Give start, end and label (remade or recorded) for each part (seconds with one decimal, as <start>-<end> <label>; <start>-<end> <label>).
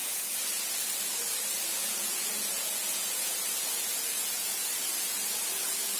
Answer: 0.0-0.7 remade; 0.7-1.8 recorded; 1.8-5.4 remade; 5.4-6.0 recorded